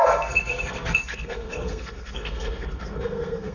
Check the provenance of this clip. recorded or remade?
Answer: remade